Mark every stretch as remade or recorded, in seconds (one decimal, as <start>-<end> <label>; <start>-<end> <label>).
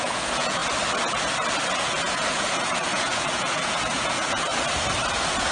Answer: 0.0-0.6 remade; 0.6-1.7 recorded; 1.7-4.5 remade; 4.5-5.1 recorded; 5.1-5.5 remade